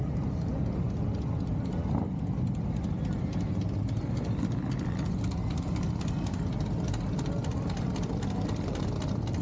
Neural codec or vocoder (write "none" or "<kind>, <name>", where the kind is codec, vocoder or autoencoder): none